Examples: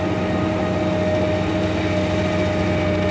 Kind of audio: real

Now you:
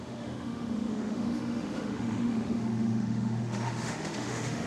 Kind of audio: fake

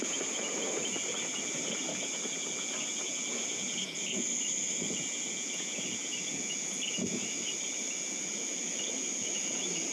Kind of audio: fake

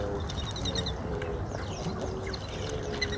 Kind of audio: real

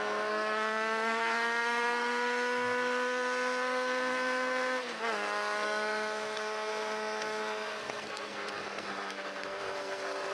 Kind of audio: fake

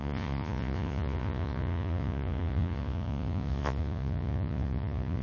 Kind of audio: fake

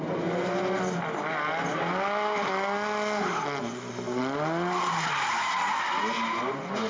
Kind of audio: real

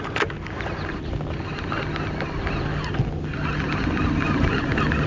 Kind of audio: real